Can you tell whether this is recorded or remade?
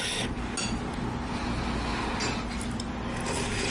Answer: recorded